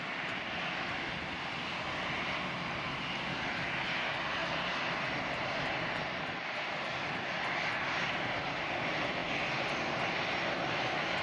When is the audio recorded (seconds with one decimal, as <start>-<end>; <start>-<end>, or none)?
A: 0.0-11.2